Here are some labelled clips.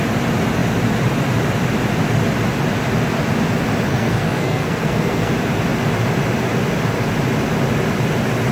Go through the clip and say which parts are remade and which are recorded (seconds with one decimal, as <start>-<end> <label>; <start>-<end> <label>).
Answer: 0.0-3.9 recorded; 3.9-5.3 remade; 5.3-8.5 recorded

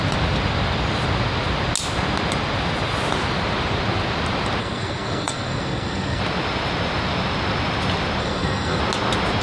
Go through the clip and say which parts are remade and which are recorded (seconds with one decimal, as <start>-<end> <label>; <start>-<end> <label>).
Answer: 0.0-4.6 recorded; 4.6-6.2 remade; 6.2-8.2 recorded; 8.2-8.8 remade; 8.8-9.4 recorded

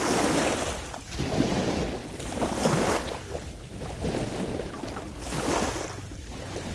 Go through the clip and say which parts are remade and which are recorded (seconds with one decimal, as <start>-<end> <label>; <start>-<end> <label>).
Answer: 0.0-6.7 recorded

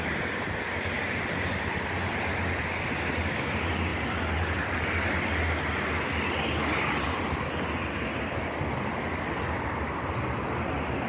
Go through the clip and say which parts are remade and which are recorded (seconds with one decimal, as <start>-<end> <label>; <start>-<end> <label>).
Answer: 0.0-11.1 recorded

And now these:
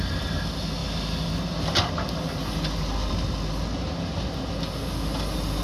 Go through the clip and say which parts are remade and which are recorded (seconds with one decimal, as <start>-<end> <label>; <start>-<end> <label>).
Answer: 0.0-5.6 recorded

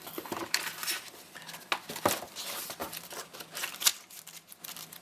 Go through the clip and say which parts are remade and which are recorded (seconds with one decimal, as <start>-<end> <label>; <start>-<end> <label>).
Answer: 0.0-5.0 recorded